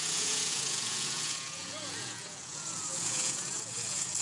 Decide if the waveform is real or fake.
fake